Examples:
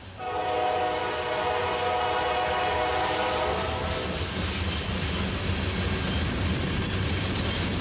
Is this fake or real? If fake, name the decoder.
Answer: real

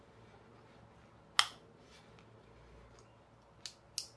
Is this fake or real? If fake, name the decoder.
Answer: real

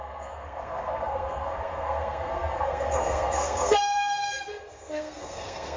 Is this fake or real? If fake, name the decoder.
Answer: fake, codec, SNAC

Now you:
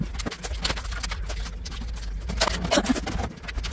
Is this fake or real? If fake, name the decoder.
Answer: real